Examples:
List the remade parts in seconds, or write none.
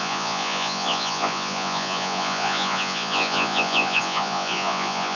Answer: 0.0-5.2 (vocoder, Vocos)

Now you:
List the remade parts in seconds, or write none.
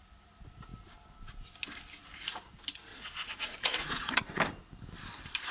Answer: 2.9-4.4 (vocoder, Vocos)